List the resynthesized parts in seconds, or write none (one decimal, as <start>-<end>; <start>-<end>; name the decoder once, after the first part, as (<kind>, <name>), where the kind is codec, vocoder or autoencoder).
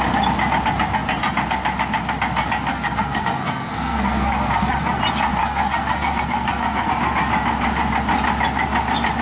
2.7-5.0 (codec, SNAC); 5.4-6.9